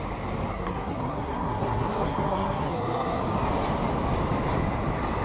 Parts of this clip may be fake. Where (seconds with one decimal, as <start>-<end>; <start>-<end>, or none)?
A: 0.5-3.2